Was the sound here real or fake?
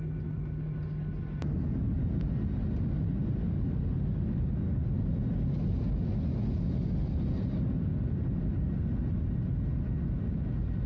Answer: real